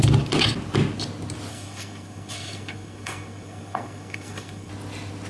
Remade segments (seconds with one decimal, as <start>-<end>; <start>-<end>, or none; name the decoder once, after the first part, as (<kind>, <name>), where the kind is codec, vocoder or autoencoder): 1.5-4.7 (codec, SNAC)